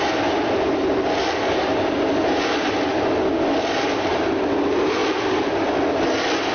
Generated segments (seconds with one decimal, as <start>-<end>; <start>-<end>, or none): none